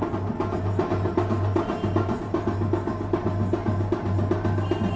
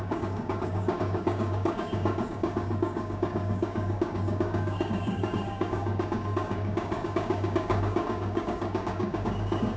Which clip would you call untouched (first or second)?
first